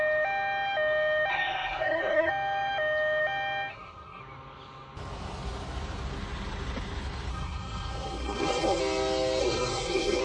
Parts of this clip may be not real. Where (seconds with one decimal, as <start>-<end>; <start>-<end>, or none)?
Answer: 1.3-2.3; 3.7-4.2; 7.3-8.8; 9.4-10.2